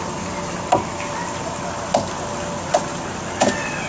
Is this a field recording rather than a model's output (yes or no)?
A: yes